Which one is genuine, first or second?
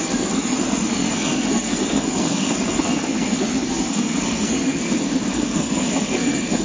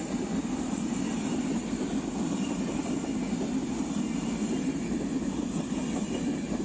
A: second